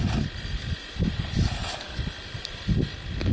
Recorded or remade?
recorded